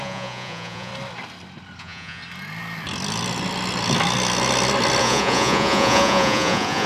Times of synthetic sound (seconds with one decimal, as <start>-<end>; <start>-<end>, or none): 0.0-0.9; 1.8-2.2; 5.0-6.9